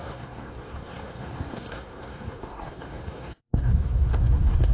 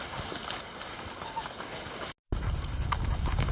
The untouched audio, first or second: second